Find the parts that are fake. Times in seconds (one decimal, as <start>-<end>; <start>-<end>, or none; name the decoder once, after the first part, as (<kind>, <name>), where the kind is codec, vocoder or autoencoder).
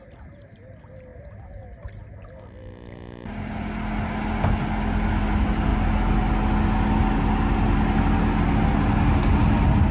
none